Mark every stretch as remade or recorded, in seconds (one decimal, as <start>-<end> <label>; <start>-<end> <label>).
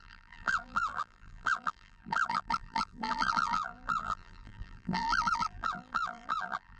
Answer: 0.0-6.8 remade